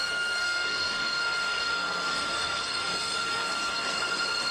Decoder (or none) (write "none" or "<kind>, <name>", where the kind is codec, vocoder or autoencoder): codec, SNAC